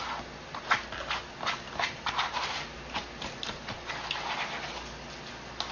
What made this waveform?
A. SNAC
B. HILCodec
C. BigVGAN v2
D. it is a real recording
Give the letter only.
D